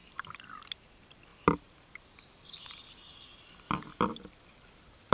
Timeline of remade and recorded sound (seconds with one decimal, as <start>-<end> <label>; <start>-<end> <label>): 0.0-5.1 recorded